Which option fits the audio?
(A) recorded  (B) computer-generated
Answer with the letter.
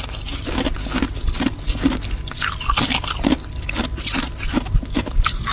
A